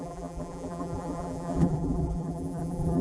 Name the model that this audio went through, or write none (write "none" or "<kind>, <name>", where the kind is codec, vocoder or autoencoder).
vocoder, BigVGAN v2